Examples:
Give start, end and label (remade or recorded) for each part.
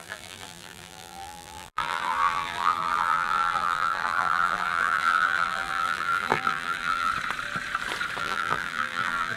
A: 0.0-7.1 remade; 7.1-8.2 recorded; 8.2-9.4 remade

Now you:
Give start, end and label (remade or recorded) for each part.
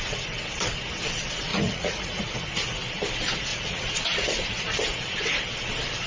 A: 0.0-1.5 recorded; 1.5-2.2 remade; 2.2-3.5 recorded; 3.5-4.6 remade; 4.6-6.1 recorded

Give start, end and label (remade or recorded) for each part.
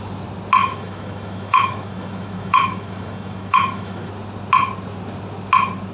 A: 0.0-0.6 recorded; 0.6-4.1 remade; 4.1-5.9 recorded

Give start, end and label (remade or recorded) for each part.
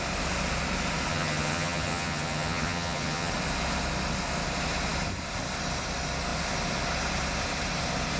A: 0.0-1.1 recorded; 1.1-3.3 remade; 3.3-8.2 recorded